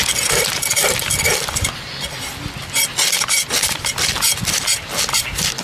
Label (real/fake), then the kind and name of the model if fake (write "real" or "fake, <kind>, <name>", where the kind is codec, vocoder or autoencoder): fake, vocoder, BigVGAN v2